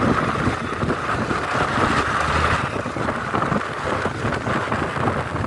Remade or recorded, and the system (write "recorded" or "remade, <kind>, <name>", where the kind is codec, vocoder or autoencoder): recorded